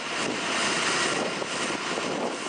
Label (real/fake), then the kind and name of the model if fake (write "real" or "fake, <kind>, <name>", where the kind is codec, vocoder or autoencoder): real